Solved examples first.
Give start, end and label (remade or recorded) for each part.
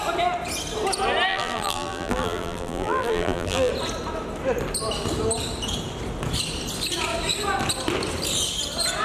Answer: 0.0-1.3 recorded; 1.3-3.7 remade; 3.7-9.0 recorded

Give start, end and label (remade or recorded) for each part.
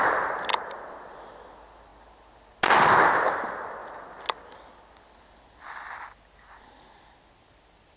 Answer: 0.0-0.5 recorded; 0.5-1.3 remade; 1.3-8.0 recorded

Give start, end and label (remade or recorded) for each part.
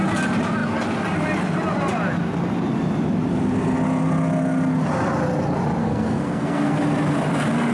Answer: 0.0-5.8 recorded; 5.8-6.8 remade; 6.8-7.7 recorded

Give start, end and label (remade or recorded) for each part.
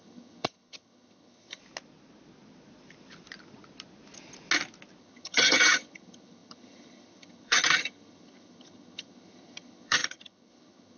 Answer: 0.0-1.6 remade; 1.6-5.0 recorded; 5.0-11.0 remade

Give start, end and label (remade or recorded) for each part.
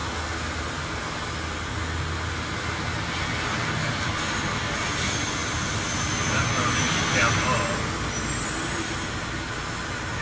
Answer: 0.0-10.2 recorded